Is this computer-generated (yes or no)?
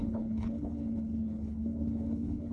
yes